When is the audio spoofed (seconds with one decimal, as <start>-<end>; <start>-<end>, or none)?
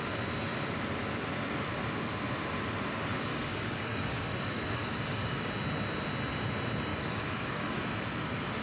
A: 3.3-5.5; 6.9-7.8